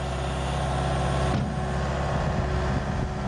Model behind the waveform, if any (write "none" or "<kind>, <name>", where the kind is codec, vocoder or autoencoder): none